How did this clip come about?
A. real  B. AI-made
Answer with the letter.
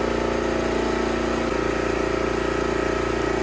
A